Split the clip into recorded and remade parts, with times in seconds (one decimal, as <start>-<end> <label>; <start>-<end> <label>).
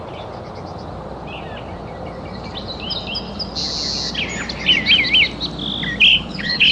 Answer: 0.0-6.1 recorded; 6.1-6.7 remade